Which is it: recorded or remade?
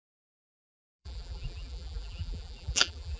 remade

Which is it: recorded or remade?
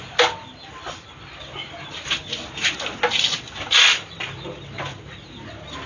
recorded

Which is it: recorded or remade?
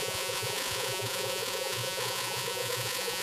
remade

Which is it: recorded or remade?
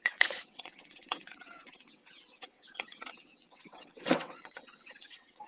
remade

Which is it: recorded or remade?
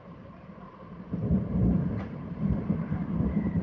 remade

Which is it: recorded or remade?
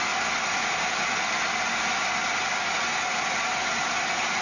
recorded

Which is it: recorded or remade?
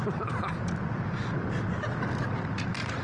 recorded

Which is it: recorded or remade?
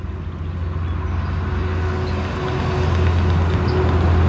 recorded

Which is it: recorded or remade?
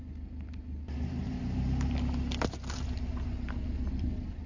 recorded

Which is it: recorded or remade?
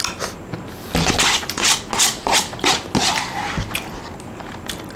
recorded